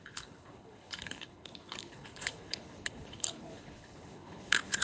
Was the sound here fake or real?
fake